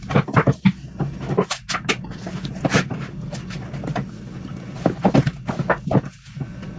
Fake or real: real